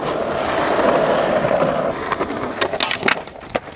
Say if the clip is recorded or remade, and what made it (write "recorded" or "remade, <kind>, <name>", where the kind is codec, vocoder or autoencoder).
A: recorded